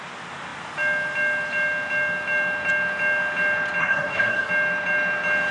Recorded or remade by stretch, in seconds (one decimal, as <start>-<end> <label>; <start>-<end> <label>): 0.0-3.8 recorded; 3.8-4.5 remade; 4.5-5.5 recorded